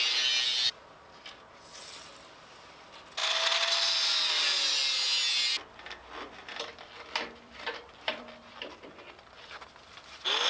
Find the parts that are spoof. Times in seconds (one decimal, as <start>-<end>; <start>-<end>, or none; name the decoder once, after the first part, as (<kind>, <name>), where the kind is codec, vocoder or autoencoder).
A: 6.5-10.1 (vocoder, BigVGAN v2)